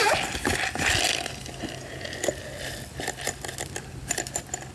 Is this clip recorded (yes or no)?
yes